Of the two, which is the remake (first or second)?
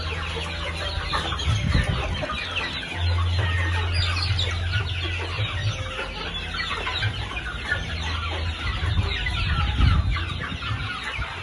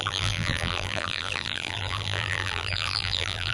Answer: second